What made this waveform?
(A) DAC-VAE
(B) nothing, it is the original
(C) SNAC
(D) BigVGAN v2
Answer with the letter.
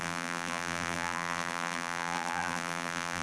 D